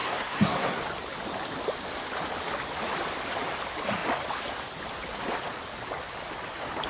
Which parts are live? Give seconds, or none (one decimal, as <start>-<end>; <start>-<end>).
0.8-6.9